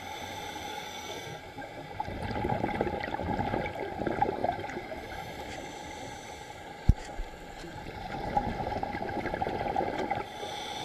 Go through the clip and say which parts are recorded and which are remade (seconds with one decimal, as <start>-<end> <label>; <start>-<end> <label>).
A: 0.0-0.7 recorded; 0.7-1.4 remade; 1.4-10.8 recorded